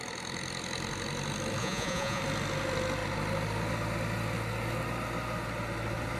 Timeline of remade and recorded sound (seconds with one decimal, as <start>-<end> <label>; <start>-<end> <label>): 0.0-1.6 recorded; 1.6-2.2 remade; 2.2-6.2 recorded

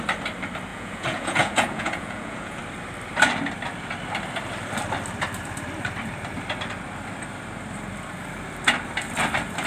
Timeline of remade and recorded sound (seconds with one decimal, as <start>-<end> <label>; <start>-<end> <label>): 0.0-0.7 recorded; 0.7-2.6 remade; 2.6-9.7 recorded

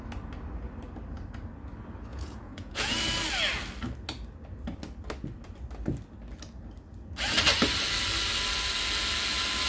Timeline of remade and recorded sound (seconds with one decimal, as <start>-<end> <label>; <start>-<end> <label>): 0.0-2.1 recorded; 2.1-3.0 remade; 3.0-9.7 recorded